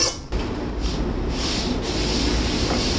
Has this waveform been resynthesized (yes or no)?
no